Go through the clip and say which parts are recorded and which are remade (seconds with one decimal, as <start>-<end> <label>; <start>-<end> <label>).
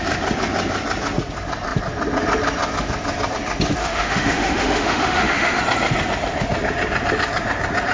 0.0-3.8 recorded; 3.8-5.6 remade; 5.6-7.9 recorded